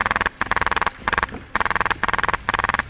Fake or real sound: real